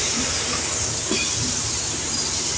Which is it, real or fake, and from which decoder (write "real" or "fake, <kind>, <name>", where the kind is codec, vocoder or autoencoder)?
real